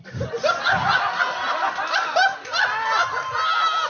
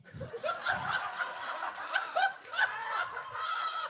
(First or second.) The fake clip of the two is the second